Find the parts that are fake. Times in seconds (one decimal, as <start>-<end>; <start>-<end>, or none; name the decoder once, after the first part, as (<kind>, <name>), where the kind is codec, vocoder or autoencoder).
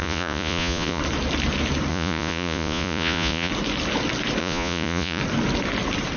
0.0-1.0 (vocoder, Vocos); 1.9-3.5; 4.4-5.2